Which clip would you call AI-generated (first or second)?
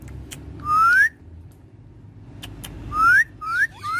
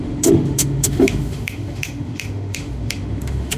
second